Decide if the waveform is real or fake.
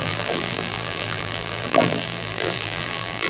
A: fake